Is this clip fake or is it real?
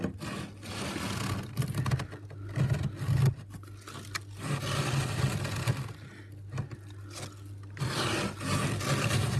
real